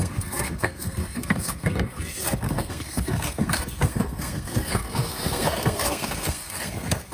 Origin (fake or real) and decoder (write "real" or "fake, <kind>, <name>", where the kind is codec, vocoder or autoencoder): fake, codec, SNAC